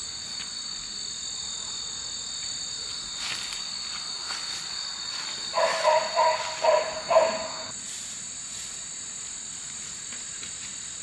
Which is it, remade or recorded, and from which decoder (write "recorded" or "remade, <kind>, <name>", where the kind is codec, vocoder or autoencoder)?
recorded